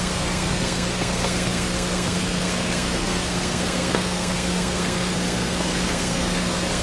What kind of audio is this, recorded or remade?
remade